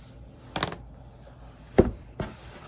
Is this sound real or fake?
real